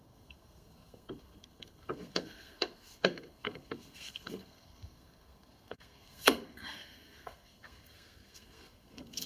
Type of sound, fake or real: fake